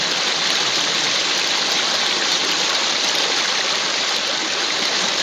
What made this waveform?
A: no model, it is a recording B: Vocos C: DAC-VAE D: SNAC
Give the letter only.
A